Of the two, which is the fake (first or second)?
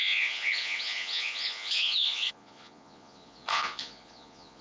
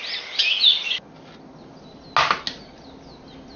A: first